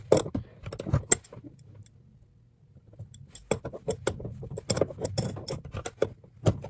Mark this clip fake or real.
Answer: real